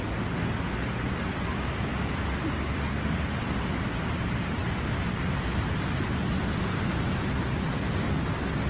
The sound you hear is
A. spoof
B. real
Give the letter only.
B